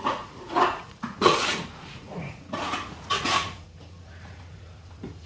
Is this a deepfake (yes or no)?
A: yes